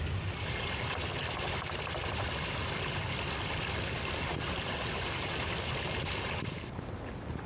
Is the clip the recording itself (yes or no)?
yes